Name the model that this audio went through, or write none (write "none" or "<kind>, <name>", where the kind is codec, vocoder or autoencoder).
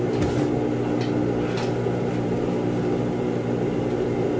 none